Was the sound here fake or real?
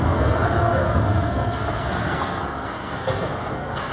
fake